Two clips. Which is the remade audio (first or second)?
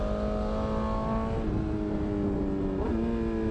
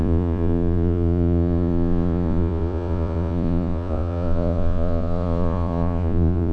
second